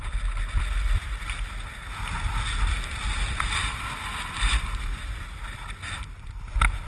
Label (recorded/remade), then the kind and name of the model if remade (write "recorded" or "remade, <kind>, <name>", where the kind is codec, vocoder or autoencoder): recorded